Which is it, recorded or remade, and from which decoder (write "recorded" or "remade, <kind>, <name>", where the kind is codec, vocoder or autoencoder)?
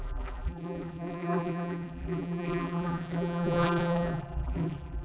remade, vocoder, BigVGAN v2